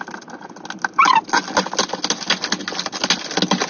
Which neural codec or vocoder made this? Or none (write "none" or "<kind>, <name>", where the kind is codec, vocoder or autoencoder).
none